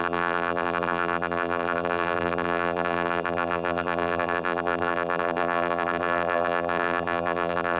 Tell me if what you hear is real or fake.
fake